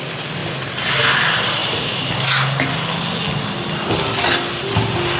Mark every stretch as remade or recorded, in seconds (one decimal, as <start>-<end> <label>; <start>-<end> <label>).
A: 0.0-5.2 recorded